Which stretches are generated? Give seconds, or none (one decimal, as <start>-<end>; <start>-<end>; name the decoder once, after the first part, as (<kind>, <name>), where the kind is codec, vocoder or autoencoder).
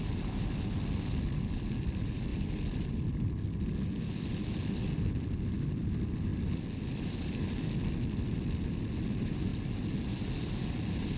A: none